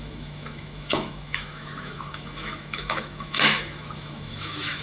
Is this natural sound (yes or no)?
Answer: no